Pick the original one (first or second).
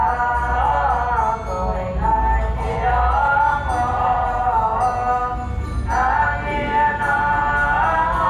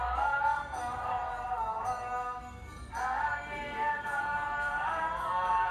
first